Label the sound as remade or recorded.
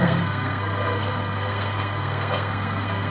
remade